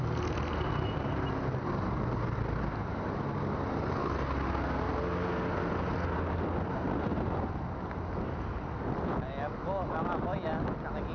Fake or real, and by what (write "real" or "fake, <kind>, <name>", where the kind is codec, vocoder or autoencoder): real